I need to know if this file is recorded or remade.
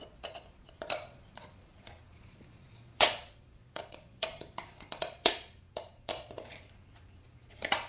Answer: remade